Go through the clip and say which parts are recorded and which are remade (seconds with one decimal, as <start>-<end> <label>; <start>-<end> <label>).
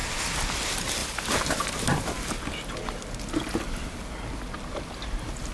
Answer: 0.0-1.0 recorded; 1.0-2.3 remade; 2.3-5.5 recorded